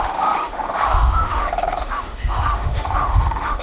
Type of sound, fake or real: fake